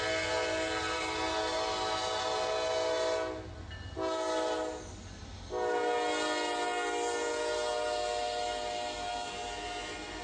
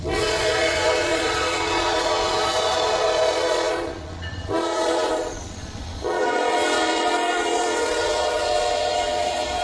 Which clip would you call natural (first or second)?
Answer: first